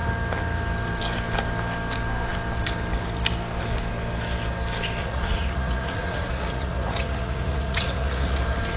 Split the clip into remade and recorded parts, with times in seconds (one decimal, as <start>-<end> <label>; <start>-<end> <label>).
0.0-5.0 recorded; 5.0-8.4 remade; 8.4-8.8 recorded